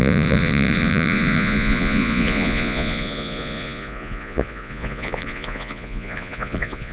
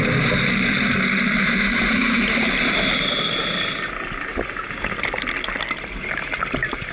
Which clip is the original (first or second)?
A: second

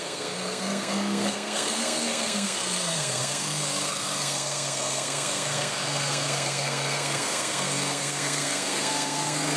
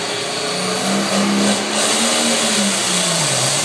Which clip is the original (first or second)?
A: second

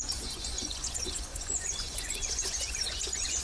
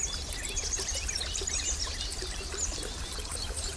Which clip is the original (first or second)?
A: second